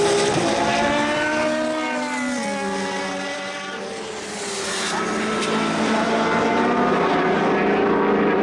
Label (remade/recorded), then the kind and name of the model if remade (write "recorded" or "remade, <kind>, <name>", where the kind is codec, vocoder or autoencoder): recorded